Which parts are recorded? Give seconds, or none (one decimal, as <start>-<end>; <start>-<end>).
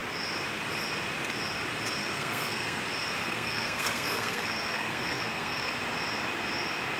0.0-2.0; 2.8-3.2; 5.7-7.0